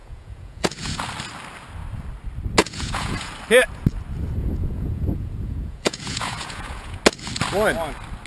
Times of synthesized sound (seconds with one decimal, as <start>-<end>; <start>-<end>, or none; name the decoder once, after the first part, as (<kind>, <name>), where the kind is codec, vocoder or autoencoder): 0.0-1.0 (vocoder, Vocos); 2.6-3.3; 4.4-7.0